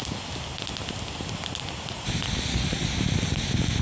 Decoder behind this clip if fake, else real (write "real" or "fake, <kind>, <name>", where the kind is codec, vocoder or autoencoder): real